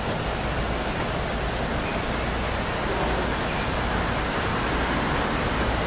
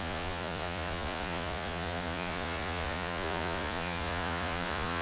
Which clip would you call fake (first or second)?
second